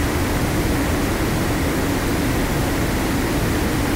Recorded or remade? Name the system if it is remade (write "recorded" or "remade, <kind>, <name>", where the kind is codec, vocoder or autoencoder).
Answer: recorded